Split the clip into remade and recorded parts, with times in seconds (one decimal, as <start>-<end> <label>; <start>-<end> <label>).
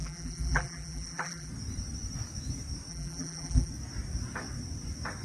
0.0-1.5 remade; 1.5-2.9 recorded; 2.9-3.7 remade; 3.7-5.2 recorded